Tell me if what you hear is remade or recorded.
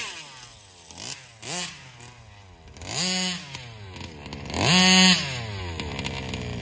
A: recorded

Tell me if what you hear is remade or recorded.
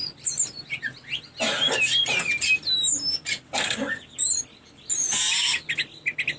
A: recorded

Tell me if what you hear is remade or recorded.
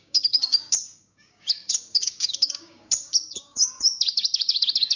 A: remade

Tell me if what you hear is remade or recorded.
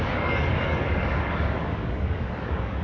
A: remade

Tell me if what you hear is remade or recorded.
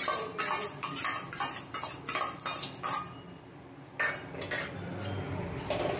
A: recorded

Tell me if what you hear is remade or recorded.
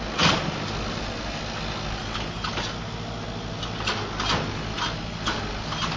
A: recorded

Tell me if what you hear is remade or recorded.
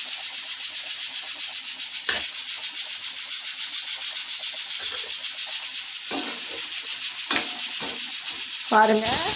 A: recorded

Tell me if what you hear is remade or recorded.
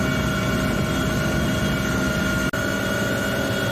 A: recorded